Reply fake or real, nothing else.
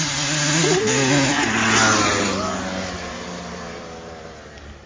real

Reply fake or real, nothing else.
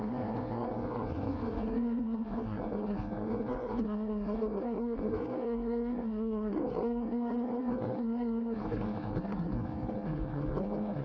fake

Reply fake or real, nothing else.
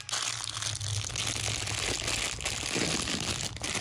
real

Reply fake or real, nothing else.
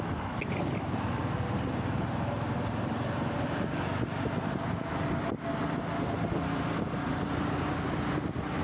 real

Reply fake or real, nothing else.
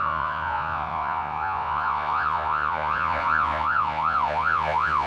fake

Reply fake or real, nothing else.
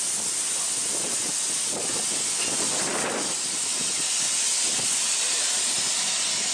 real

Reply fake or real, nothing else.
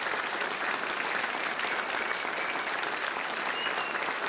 real